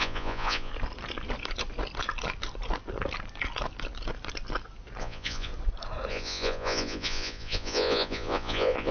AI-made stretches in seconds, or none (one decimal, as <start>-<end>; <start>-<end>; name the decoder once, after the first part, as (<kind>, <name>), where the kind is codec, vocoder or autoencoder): 0.0-0.7 (vocoder, Vocos); 5.0-5.5; 6.1-8.9